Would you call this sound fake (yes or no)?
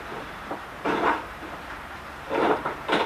yes